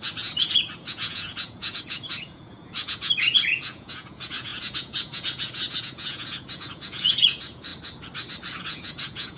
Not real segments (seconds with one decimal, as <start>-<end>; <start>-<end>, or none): 0.0-7.7; 8.6-9.4